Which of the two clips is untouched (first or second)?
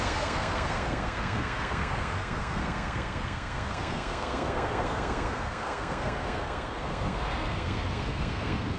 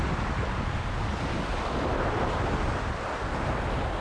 second